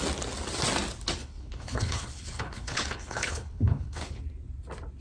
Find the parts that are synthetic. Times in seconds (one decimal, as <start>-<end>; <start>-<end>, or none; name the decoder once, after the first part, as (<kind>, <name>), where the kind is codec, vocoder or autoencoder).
1.2-4.2 (codec, HILCodec)